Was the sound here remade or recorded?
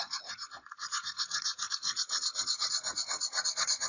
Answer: remade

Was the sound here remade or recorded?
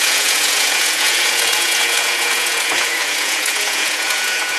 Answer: remade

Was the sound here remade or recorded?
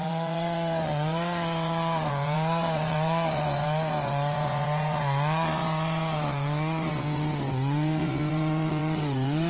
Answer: remade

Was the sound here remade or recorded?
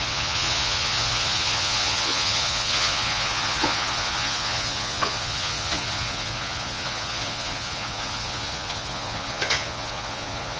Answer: remade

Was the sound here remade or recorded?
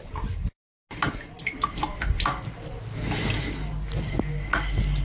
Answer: recorded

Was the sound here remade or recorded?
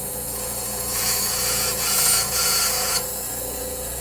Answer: remade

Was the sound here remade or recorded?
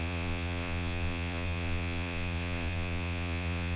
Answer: remade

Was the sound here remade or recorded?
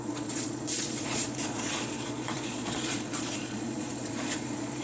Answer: remade